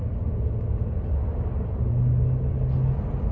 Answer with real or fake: real